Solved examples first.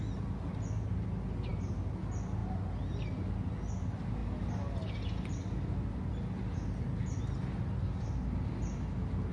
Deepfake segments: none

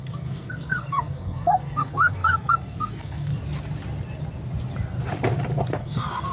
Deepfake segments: 0.0-3.3; 5.7-6.3